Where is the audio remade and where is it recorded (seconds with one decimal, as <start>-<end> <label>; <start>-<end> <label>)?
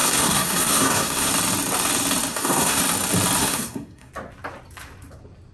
0.0-1.3 remade; 1.3-2.3 recorded; 2.3-2.8 remade; 2.8-3.4 recorded; 3.4-4.1 remade; 4.1-5.5 recorded